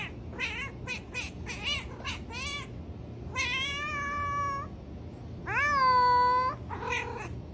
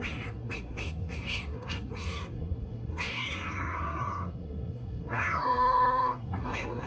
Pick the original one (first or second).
first